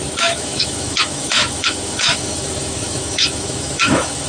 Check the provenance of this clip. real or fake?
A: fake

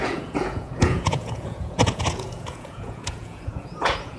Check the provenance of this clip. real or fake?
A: fake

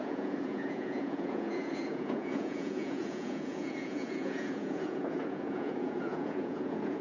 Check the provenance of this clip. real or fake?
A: fake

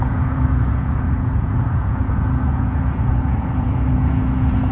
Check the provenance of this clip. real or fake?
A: fake